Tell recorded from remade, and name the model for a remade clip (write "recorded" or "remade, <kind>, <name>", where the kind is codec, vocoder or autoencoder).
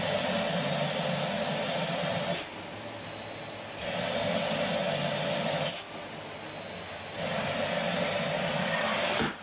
recorded